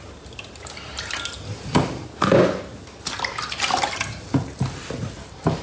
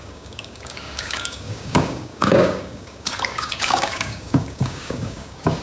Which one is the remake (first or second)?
second